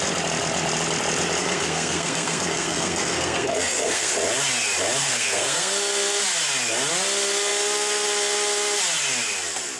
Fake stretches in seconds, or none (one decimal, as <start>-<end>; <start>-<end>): 1.4-4.1; 5.0-5.7